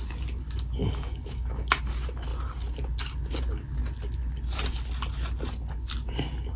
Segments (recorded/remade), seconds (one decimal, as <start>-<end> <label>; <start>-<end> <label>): 0.0-0.8 recorded; 0.8-1.7 remade; 1.7-6.6 recorded